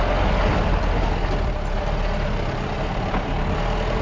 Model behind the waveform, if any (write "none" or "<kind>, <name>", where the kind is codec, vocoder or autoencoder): none